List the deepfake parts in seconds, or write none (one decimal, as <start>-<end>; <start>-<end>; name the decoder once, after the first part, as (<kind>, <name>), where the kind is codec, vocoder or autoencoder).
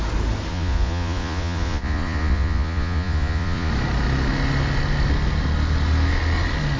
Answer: 0.5-3.7 (vocoder, Vocos)